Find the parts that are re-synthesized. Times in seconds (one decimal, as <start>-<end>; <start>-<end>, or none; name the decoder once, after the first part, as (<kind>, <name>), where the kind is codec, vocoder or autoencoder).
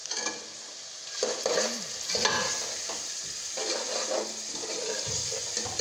none